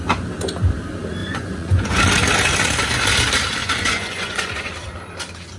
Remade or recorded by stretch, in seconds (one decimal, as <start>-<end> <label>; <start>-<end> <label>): 0.0-1.2 recorded; 1.2-2.0 remade; 2.0-3.6 recorded; 3.6-4.7 remade; 4.7-5.6 recorded